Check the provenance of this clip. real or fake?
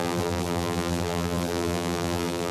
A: fake